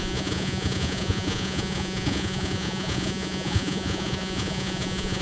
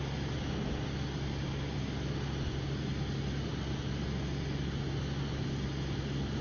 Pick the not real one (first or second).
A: first